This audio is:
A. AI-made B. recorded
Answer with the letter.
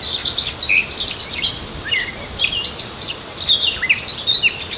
B